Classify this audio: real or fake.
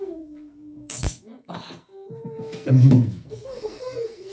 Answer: fake